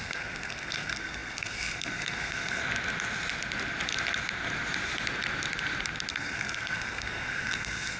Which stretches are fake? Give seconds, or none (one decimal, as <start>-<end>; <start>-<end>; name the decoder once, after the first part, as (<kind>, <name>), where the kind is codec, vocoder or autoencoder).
0.0-2.6 (codec, SNAC); 6.1-8.0